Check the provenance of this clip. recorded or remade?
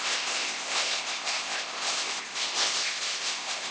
remade